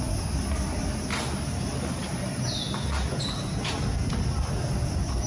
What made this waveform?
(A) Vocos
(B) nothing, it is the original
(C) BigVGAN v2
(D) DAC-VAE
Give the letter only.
B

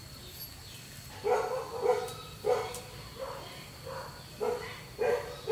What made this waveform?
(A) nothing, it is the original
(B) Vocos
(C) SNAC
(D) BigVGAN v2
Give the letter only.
A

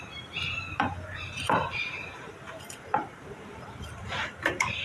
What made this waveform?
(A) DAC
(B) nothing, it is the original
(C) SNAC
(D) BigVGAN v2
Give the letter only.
D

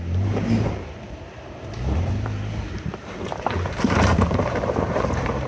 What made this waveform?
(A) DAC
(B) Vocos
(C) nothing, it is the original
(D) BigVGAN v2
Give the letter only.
D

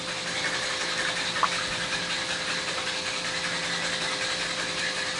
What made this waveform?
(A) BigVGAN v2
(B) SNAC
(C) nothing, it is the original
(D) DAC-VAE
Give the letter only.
C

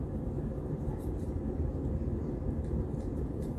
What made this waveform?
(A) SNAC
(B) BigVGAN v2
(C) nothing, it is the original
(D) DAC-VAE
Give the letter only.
B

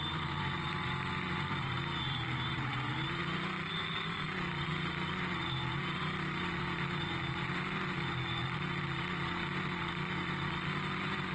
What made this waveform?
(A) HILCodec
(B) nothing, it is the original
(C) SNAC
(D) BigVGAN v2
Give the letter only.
D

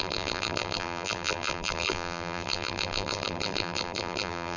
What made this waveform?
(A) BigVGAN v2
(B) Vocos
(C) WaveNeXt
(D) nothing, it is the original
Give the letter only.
A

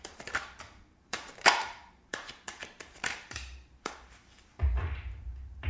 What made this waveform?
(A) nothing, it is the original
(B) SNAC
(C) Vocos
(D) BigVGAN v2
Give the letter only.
D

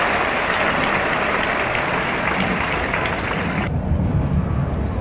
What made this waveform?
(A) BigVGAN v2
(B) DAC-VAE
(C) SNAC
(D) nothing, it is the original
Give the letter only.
D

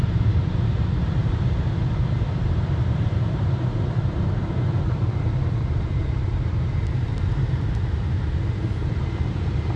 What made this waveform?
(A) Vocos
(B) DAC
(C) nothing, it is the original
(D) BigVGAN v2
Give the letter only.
D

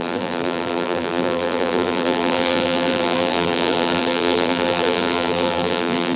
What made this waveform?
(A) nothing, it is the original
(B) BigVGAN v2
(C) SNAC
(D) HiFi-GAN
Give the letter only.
B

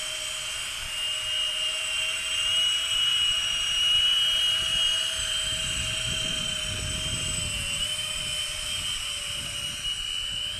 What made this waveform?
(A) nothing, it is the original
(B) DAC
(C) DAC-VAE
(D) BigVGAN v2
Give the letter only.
D